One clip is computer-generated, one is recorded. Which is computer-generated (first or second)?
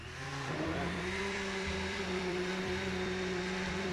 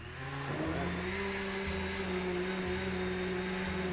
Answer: first